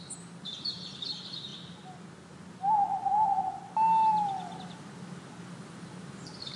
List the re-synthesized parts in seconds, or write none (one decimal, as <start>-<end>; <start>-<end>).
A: 0.0-1.5; 5.5-6.6